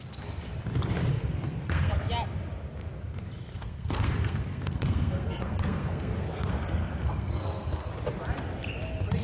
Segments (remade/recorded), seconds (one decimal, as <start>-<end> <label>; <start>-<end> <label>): 0.0-1.1 recorded; 1.1-1.9 remade; 1.9-3.5 recorded; 3.5-7.9 remade; 7.9-9.2 recorded